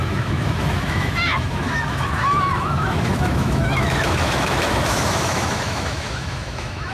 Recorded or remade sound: remade